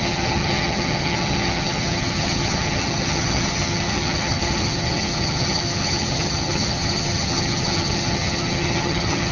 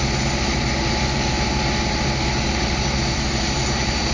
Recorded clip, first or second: second